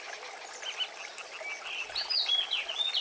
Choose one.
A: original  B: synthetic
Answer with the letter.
A